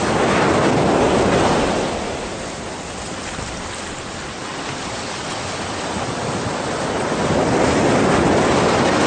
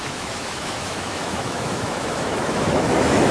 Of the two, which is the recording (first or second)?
first